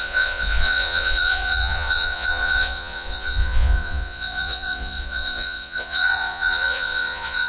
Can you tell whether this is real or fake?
fake